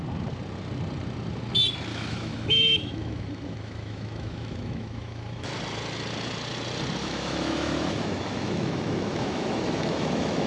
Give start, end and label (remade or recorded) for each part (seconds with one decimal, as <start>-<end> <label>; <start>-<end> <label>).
0.0-1.9 recorded; 1.9-5.5 remade; 5.5-7.0 recorded; 7.0-10.5 remade